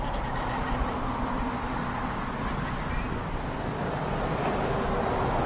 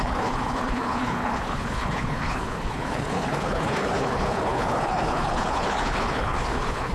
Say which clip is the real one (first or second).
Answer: first